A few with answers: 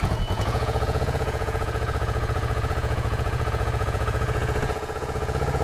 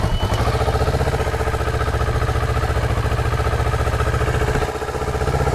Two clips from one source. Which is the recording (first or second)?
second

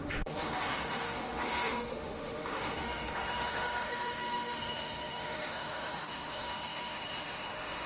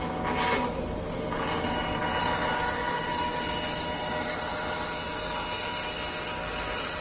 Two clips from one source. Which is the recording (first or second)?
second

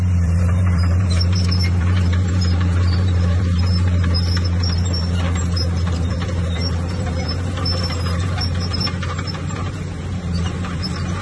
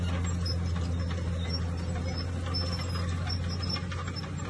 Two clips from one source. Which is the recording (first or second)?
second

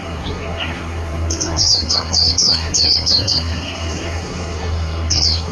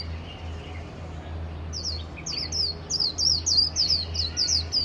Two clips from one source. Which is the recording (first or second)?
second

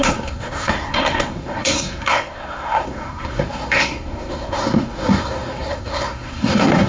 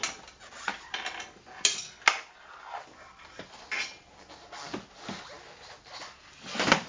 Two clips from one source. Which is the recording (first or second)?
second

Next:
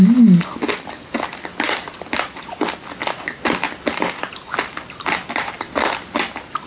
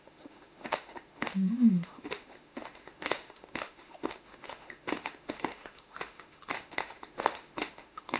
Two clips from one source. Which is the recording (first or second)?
first